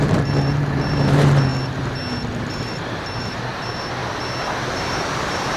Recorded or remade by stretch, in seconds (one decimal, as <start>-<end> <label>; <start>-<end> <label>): 0.0-1.5 remade; 1.5-2.4 recorded; 2.4-4.0 remade; 4.0-4.8 recorded; 4.8-5.6 remade